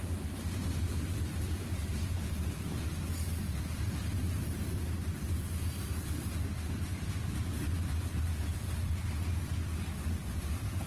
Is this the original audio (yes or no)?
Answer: yes